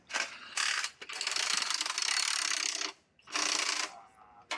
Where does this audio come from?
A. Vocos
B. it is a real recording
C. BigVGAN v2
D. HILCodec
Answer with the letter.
B